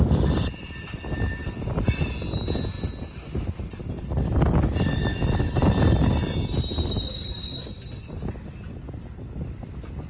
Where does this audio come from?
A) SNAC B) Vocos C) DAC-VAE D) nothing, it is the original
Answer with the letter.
D